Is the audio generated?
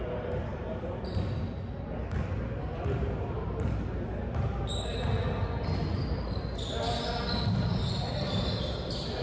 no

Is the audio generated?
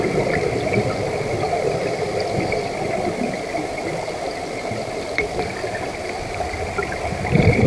yes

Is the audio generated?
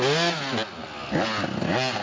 no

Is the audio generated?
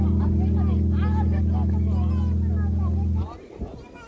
no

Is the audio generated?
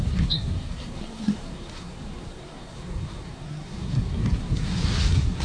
yes